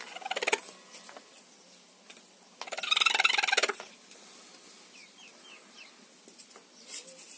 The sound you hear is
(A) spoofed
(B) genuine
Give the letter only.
B